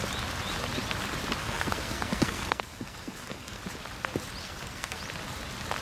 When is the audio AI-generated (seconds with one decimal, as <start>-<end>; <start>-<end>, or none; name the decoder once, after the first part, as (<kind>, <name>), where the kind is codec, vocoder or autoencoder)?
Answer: 1.4-3.6 (codec, SNAC); 4.4-5.0